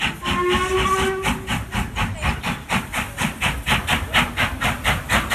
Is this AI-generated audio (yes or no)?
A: no